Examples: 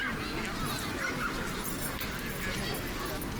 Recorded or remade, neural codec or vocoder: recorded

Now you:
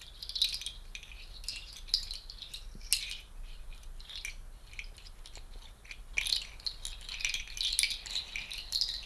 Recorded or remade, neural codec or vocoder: recorded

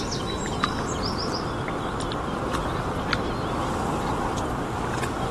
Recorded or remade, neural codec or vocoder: recorded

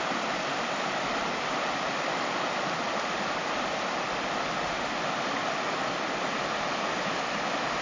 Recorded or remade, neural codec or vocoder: recorded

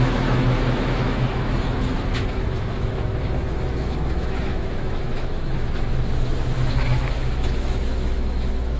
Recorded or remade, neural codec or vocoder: remade, autoencoder, DAC-VAE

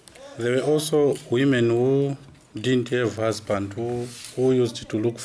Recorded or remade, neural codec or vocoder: recorded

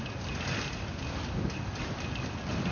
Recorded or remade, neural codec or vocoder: recorded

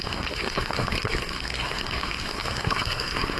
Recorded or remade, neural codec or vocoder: remade, codec, SNAC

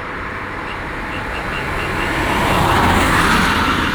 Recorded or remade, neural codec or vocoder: recorded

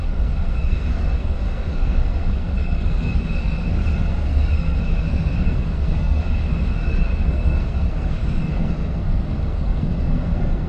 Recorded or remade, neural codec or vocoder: remade, codec, SNAC